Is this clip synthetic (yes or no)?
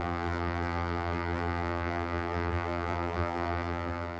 yes